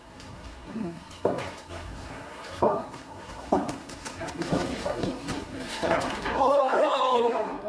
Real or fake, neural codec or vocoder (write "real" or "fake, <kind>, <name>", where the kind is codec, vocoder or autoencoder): fake, codec, SNAC